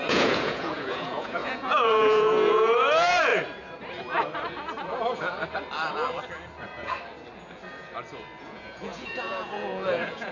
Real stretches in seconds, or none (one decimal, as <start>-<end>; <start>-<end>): 3.3-8.4